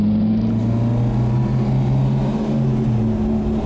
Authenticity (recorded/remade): recorded